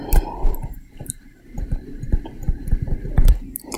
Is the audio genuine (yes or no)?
no